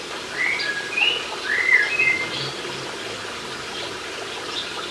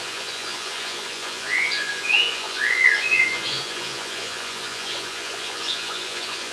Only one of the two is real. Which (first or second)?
first